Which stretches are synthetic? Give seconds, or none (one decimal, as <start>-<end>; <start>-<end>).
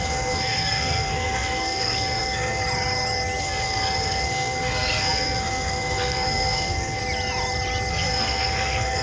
0.0-2.6; 3.4-7.0; 7.9-9.0